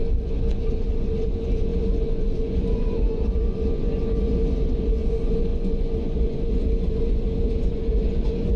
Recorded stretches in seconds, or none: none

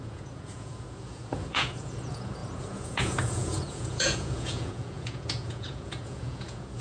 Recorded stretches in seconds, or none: none

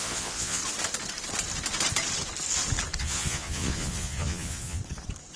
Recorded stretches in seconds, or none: 0.6-3.0; 4.8-5.4

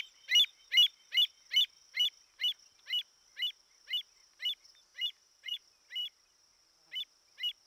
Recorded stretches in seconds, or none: 0.0-4.9; 5.6-7.7

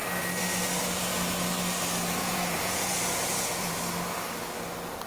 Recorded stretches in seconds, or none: 0.0-2.2; 3.8-5.1

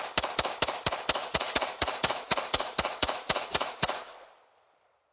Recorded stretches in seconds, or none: 0.0-1.2; 4.3-5.1